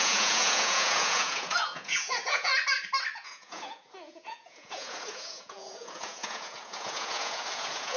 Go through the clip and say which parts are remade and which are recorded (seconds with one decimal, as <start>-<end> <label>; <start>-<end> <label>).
0.0-2.5 remade; 2.5-3.1 recorded; 3.1-8.0 remade